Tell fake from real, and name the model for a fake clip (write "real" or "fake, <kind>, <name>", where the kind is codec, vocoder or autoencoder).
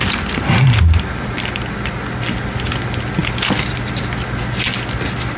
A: real